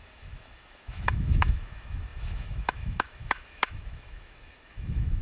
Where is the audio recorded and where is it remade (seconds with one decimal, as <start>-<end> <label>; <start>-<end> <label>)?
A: 0.0-5.2 remade